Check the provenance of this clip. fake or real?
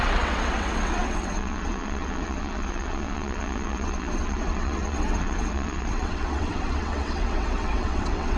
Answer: fake